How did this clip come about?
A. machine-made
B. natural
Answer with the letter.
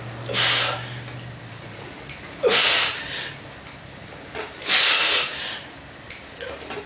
B